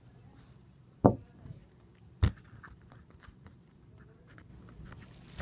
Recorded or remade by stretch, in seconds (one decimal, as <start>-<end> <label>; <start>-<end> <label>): 0.0-1.6 remade; 1.6-2.5 recorded; 2.5-4.5 remade; 4.5-5.4 recorded